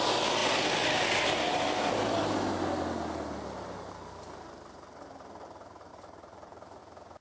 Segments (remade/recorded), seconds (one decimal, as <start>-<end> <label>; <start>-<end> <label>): 0.0-5.9 recorded; 5.9-6.8 remade; 6.8-7.2 recorded